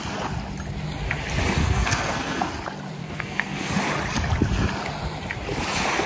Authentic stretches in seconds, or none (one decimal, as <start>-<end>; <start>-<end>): 0.0-1.6; 2.5-3.0; 3.7-6.1